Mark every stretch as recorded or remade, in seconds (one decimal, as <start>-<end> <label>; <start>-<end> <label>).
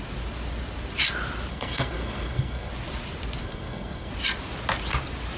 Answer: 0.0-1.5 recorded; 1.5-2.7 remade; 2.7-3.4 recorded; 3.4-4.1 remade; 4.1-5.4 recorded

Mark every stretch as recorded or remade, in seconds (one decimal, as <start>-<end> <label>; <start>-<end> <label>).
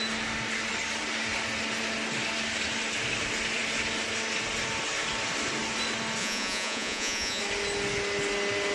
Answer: 0.0-6.2 recorded; 6.2-7.4 remade; 7.4-8.7 recorded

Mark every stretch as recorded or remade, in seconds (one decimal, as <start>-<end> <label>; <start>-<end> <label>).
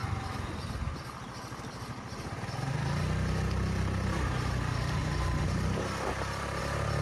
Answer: 0.0-7.0 recorded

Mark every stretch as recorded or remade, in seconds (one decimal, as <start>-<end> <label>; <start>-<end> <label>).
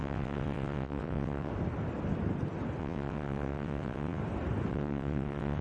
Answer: 0.0-1.5 remade; 1.5-2.8 recorded; 2.8-4.2 remade; 4.2-4.7 recorded; 4.7-5.6 remade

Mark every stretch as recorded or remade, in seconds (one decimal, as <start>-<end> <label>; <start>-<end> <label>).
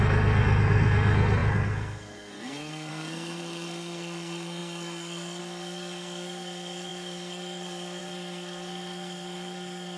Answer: 0.0-10.0 remade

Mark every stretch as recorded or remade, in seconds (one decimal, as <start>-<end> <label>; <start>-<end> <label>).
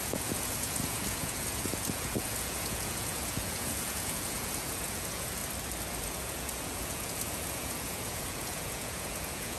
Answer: 0.0-5.4 remade; 5.4-6.0 recorded; 6.0-9.6 remade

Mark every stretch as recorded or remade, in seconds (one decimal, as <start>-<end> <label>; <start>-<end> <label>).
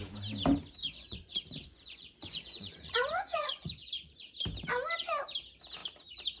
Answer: 0.0-0.8 recorded; 0.8-4.2 remade; 4.2-6.4 recorded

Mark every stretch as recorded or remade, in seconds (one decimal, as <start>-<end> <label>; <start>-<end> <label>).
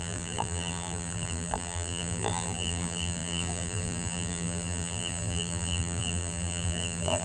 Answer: 0.0-7.2 remade